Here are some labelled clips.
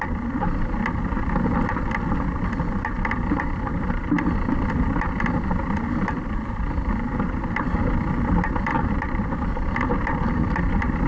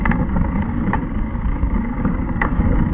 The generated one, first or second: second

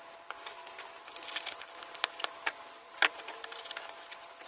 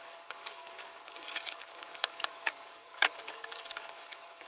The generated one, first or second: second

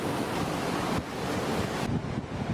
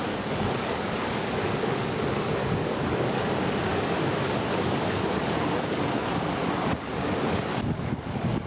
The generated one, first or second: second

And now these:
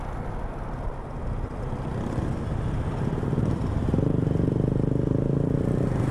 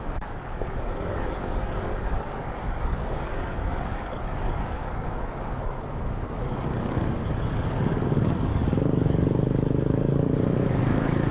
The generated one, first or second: second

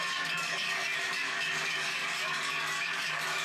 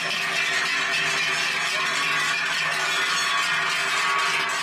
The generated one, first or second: first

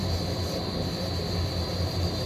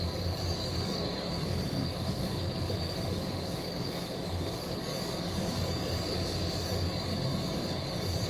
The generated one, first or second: second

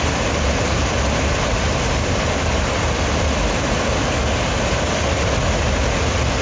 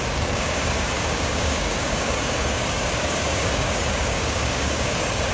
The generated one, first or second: second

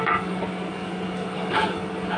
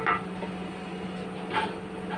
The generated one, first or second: first